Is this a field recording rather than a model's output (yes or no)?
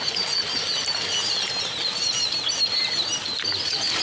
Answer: yes